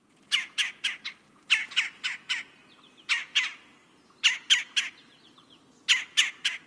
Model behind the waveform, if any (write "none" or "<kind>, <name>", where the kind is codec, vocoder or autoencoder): none